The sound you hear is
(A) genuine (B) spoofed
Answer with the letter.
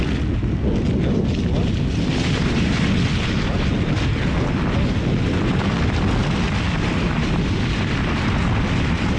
A